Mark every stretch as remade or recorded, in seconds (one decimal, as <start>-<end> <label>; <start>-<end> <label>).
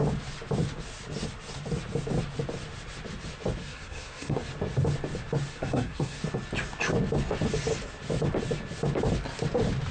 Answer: 0.0-3.6 recorded; 3.6-4.5 remade; 4.5-5.5 recorded; 5.5-6.2 remade; 6.2-9.9 recorded